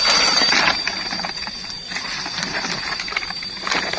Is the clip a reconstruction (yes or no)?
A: yes